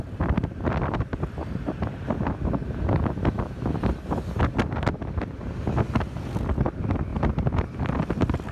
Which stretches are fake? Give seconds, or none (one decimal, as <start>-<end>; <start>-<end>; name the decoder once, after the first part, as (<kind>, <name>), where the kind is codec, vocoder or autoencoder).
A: none